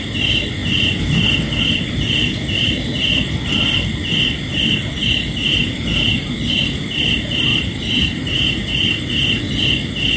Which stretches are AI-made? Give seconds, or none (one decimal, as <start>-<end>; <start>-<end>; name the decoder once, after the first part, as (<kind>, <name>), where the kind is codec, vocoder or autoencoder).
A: 5.6-6.6 (vocoder, BigVGAN v2); 7.5-9.4